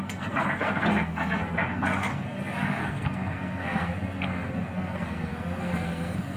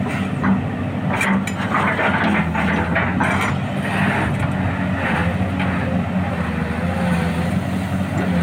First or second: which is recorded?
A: second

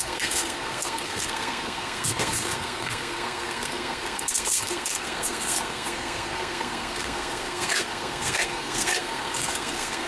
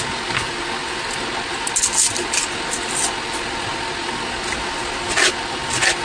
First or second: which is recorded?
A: second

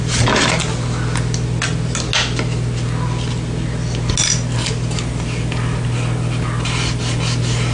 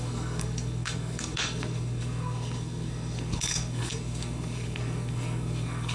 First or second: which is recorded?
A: first